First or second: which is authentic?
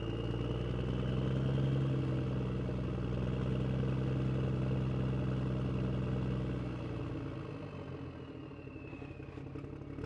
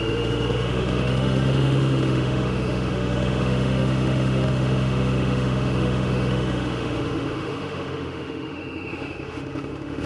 first